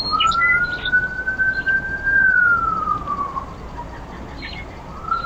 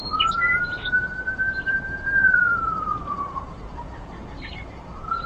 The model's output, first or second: second